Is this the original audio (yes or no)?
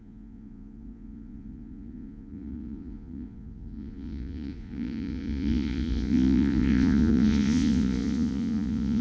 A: no